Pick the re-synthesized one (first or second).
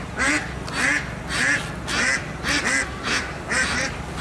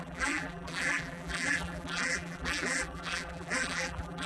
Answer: second